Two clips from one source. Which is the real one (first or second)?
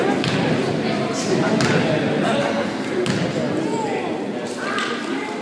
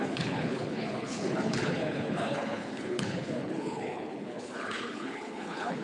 first